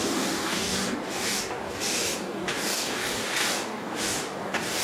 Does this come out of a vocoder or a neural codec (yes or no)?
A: yes